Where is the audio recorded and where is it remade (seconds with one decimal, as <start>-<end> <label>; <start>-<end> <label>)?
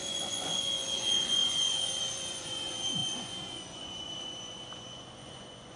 0.0-5.8 remade